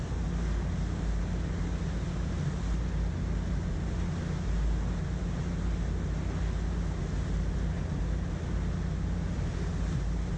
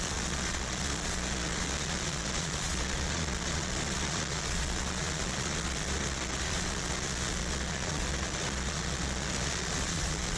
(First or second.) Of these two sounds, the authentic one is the first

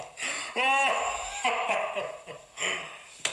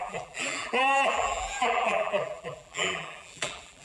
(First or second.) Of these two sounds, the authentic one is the first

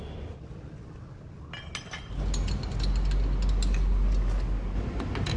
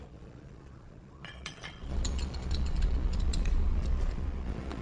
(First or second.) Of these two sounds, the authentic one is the first